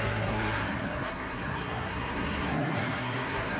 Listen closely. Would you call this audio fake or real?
fake